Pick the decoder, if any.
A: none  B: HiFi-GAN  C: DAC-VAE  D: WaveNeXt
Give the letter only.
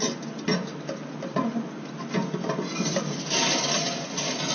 A